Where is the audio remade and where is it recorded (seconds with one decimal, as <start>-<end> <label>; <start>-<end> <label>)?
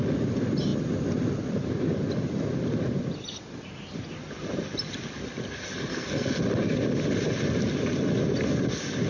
0.0-5.9 recorded; 5.9-6.4 remade; 6.4-9.1 recorded